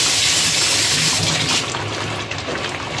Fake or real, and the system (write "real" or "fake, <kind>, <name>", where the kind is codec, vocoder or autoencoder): real